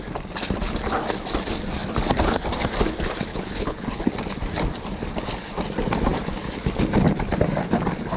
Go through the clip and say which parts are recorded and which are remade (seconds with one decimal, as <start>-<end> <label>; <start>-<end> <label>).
0.0-3.3 recorded; 3.3-4.1 remade; 4.1-8.2 recorded